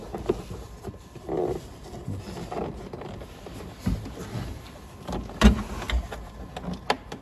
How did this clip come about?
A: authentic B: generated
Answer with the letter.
A